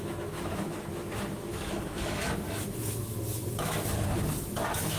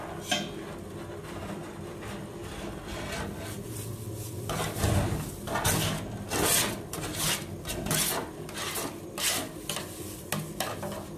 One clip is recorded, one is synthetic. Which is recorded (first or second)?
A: second